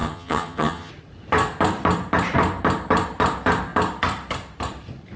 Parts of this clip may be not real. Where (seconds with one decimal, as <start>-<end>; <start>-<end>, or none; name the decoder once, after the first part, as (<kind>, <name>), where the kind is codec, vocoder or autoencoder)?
0.0-0.9 (vocoder, HiFi-GAN)

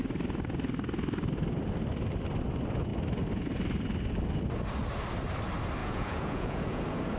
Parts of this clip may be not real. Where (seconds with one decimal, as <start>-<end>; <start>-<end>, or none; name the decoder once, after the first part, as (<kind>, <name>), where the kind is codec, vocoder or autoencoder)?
5.8-6.8 (vocoder, Vocos)

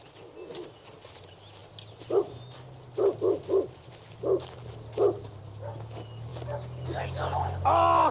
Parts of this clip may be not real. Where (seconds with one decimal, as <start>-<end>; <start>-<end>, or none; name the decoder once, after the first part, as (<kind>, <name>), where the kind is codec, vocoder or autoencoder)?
none

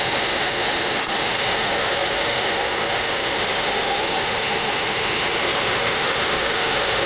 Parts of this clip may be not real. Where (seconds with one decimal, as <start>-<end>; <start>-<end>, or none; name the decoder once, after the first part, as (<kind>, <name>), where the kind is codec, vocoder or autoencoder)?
0.0-7.1 (autoencoder, DAC-VAE)

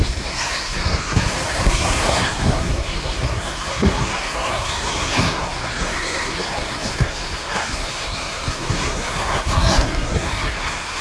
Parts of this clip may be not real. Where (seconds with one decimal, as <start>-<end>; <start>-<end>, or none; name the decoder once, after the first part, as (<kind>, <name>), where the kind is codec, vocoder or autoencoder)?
0.0-11.0 (codec, SNAC)